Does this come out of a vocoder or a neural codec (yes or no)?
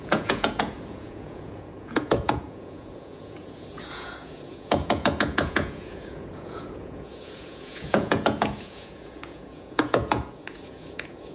yes